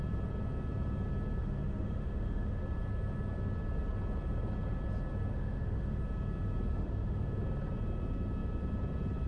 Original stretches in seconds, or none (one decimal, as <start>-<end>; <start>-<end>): 0.0-1.4; 2.6-5.3; 6.0-6.7; 7.3-9.3